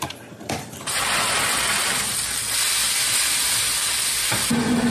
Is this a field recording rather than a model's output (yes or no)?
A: yes